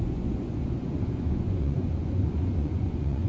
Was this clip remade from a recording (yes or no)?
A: yes